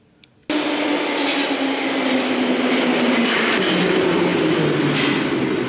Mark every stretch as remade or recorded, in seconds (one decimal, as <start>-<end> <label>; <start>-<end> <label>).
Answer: 0.0-5.7 recorded